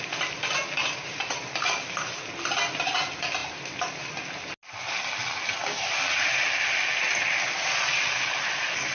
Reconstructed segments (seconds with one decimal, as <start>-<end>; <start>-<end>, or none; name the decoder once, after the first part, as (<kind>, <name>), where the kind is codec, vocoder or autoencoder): none